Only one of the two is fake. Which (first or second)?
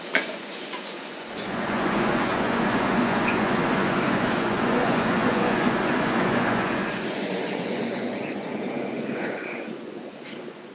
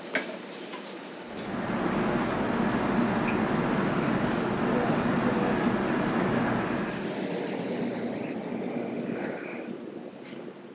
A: first